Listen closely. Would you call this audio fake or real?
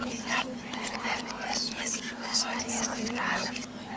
real